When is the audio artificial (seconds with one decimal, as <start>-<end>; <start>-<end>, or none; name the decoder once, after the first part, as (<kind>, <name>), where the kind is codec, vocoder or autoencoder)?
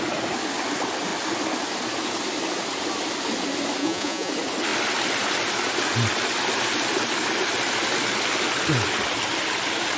3.8-4.3 (vocoder, Vocos)